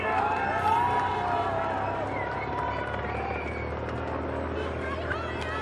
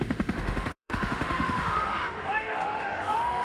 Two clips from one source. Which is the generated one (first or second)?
second